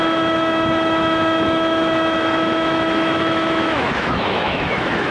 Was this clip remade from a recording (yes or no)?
yes